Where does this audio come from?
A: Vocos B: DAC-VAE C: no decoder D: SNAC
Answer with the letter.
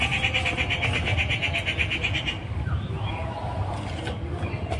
C